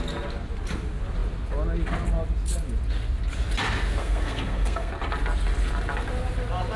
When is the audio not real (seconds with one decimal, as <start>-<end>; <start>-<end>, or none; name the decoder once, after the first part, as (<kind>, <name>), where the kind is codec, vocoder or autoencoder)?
4.0-4.9 (codec, SNAC)